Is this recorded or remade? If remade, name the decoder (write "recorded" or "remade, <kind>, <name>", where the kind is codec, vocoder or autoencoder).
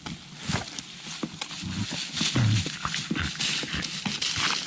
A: recorded